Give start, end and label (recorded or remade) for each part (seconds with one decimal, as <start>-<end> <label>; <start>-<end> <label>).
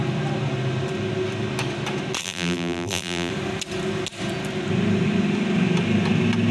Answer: 0.0-2.2 recorded; 2.2-3.3 remade; 3.3-6.5 recorded